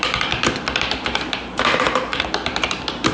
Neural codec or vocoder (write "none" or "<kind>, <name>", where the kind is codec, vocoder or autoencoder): vocoder, BigVGAN v2